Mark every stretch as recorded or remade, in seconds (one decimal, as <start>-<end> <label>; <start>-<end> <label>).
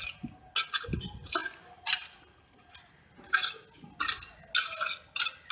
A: 0.0-5.5 recorded